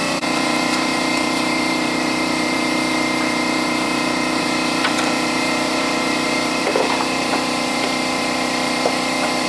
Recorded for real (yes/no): no